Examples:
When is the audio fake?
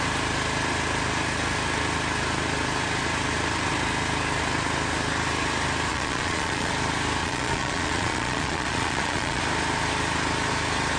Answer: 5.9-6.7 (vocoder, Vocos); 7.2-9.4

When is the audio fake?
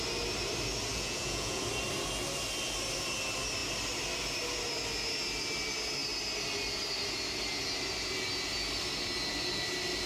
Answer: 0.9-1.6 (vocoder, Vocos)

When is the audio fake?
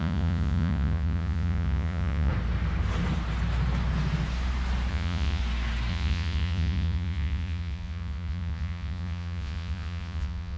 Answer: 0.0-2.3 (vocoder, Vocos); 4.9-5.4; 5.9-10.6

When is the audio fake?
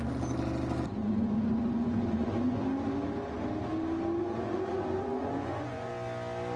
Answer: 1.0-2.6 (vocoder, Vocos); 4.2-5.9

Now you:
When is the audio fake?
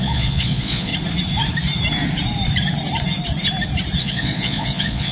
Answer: 0.0-0.9 (vocoder, Vocos); 4.0-5.1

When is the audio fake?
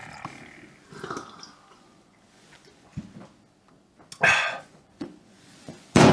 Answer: 1.7-2.9 (vocoder, Vocos); 4.3-6.1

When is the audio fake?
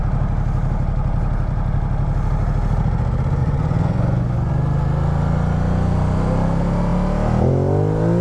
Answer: 3.4-4.5 (vocoder, Vocos)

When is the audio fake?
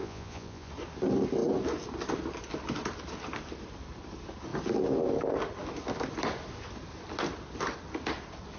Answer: 0.0-0.7 (vocoder, Vocos)